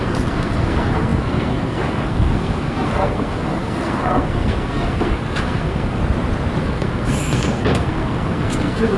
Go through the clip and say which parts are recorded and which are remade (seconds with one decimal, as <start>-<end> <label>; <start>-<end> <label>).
0.0-6.0 remade; 6.0-6.6 recorded; 6.6-9.0 remade